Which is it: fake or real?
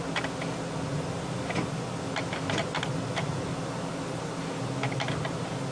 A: real